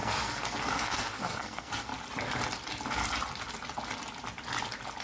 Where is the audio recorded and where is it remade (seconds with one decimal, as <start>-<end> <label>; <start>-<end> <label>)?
0.0-1.9 remade; 1.9-5.0 recorded